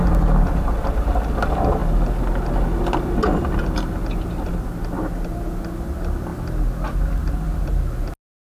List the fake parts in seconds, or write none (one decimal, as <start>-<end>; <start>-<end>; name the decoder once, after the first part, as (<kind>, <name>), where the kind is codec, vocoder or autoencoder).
none